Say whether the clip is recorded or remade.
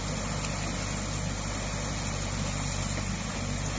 recorded